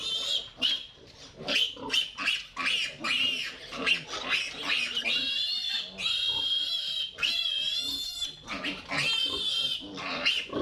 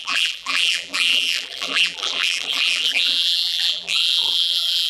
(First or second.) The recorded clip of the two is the first